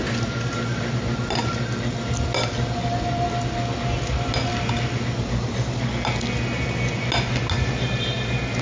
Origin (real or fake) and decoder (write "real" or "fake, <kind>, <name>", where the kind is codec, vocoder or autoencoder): real